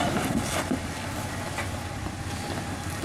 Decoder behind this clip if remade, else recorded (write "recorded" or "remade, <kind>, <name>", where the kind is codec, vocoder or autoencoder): remade, vocoder, BigVGAN v2